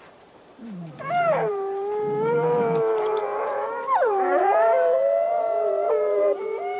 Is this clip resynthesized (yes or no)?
yes